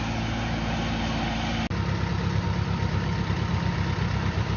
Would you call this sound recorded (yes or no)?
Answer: yes